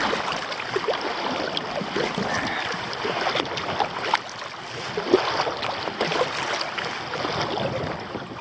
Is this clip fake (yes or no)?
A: no